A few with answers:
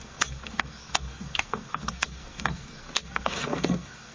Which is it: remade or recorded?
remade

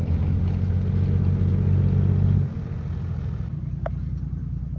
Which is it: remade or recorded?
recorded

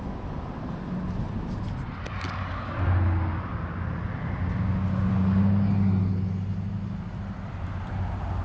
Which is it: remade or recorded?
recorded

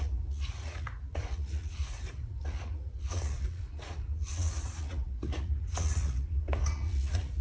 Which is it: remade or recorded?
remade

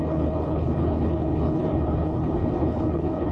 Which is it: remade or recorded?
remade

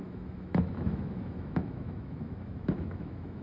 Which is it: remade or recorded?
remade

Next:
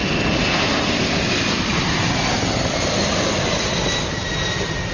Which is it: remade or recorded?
recorded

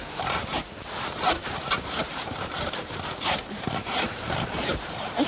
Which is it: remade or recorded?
remade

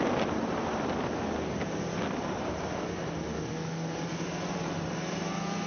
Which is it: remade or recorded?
recorded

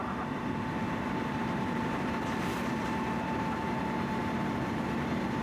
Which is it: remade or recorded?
remade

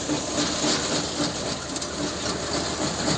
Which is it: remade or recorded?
recorded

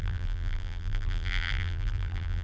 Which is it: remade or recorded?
remade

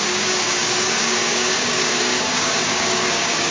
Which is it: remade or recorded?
remade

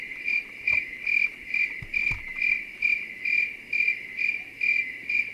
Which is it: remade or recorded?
recorded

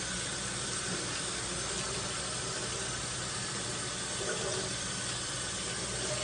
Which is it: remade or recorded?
recorded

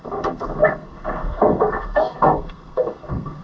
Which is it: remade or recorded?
remade